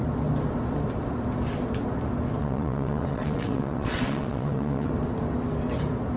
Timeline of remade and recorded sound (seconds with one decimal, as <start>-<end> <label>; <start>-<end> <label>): 0.0-2.4 recorded; 2.4-4.9 remade; 4.9-6.2 recorded